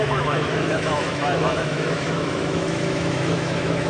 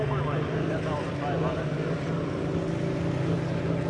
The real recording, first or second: second